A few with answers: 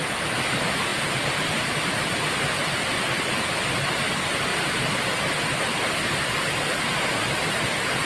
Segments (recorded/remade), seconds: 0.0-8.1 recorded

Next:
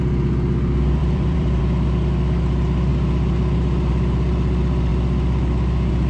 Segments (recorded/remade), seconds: 0.0-1.0 recorded; 1.0-1.6 remade; 1.6-6.1 recorded

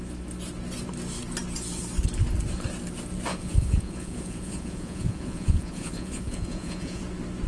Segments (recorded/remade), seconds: 0.0-3.3 recorded; 3.3-7.0 remade; 7.0-7.5 recorded